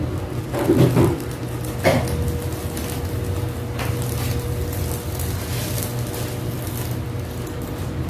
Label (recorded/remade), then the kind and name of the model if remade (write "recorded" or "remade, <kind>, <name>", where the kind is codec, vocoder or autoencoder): recorded